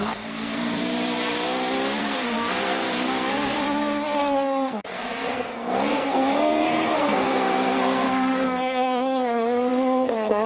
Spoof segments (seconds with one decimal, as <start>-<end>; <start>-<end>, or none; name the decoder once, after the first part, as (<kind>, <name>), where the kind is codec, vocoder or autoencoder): 0.0-0.9 (codec, SNAC); 2.0-10.5